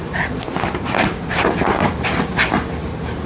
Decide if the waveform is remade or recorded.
recorded